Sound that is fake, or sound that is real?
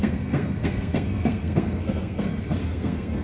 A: fake